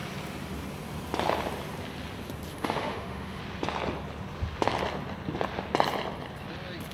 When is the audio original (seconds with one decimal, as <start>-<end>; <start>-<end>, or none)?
0.0-2.5; 3.4-6.9